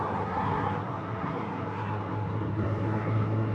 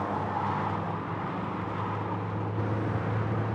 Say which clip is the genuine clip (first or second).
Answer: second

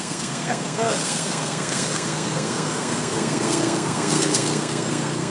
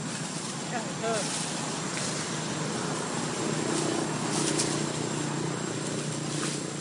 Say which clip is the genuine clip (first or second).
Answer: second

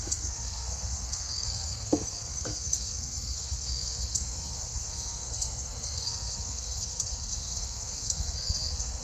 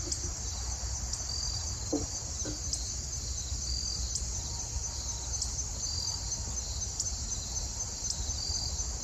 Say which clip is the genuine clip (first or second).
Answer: second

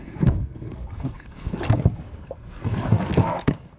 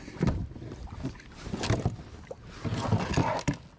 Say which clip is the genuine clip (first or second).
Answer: second